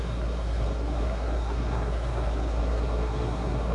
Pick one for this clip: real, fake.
fake